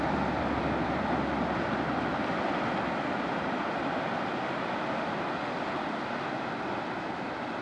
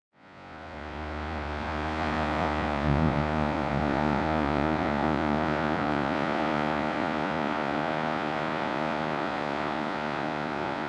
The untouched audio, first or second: first